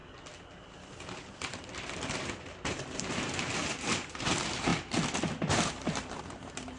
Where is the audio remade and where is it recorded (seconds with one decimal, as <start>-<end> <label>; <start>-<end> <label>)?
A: 0.0-1.3 recorded; 1.3-4.7 remade; 4.7-5.2 recorded; 5.2-6.8 remade